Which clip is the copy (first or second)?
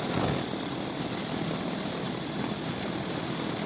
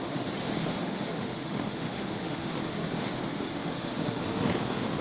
second